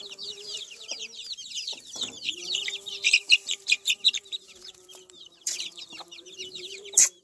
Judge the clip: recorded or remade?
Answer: remade